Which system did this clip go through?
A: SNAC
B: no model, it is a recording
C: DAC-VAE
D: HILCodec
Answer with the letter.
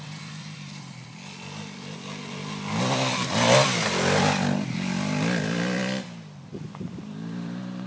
B